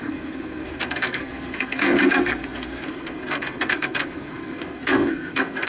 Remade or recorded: remade